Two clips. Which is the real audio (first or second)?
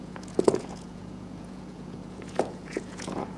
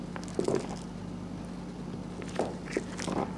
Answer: second